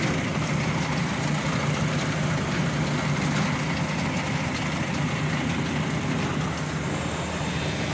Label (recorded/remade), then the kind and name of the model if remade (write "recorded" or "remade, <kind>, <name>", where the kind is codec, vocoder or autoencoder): recorded